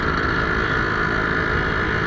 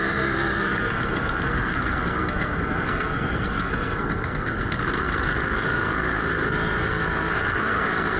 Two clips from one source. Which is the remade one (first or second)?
second